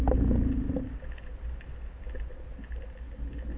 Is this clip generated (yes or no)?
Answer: no